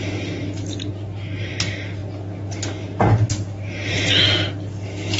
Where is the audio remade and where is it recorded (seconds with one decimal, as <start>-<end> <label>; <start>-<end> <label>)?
0.0-5.2 recorded